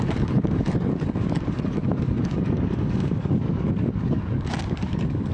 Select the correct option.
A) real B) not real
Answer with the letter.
B